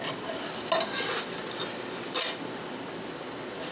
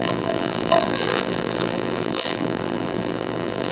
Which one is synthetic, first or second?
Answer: second